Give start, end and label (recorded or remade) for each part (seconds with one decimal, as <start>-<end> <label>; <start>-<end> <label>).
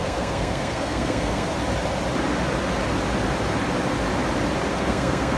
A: 0.0-1.5 remade; 1.5-4.7 recorded; 4.7-5.4 remade